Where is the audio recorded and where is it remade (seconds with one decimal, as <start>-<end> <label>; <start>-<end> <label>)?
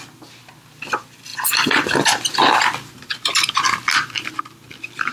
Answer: 0.0-5.1 recorded